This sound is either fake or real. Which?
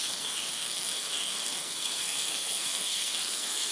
fake